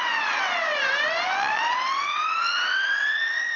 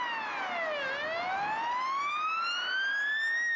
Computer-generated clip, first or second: first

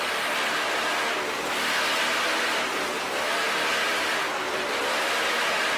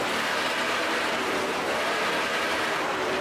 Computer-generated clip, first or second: second